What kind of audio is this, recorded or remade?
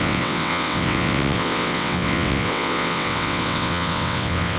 remade